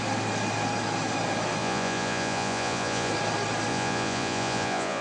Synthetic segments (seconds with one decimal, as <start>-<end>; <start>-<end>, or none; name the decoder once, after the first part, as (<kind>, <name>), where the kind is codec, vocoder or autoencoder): 1.6-3.1 (vocoder, Vocos); 3.7-5.0